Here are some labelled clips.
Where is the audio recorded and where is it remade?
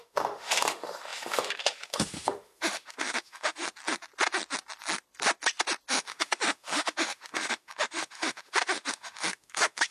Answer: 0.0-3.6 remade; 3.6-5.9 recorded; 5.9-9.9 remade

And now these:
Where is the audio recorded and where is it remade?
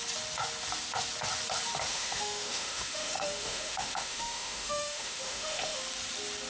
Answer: 0.0-1.9 recorded; 1.9-5.8 remade; 5.8-6.5 recorded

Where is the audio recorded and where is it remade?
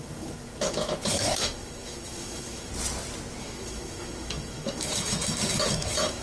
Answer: 0.0-2.7 remade; 2.7-3.4 recorded; 3.4-6.2 remade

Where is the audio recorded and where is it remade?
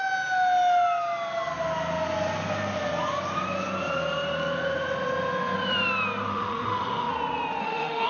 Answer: 0.0-6.3 recorded; 6.3-7.1 remade; 7.1-7.6 recorded; 7.6-8.1 remade